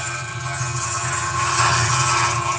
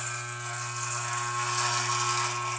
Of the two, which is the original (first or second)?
second